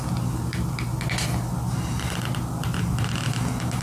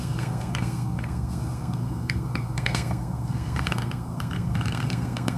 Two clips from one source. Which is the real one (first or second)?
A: first